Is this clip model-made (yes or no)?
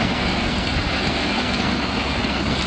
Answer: yes